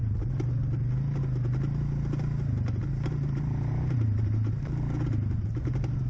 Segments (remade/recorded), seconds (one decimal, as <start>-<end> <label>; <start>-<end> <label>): 0.0-2.9 recorded; 2.9-4.6 remade; 4.6-6.1 recorded